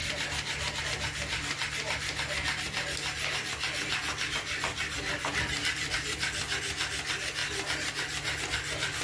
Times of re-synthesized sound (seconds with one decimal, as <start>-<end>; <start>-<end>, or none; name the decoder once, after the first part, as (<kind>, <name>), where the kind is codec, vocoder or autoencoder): none